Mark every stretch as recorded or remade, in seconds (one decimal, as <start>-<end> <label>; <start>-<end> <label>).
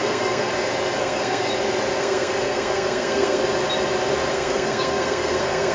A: 0.0-0.5 remade; 0.5-1.0 recorded; 1.0-1.5 remade; 1.5-2.0 recorded; 2.0-3.4 remade; 3.4-4.3 recorded; 4.3-5.7 remade